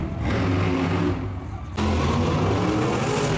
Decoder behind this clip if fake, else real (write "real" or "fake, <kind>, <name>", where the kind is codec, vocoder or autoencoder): real